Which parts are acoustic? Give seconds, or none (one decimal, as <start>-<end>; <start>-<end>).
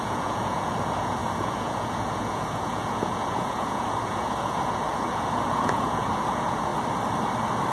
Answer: 6.7-7.7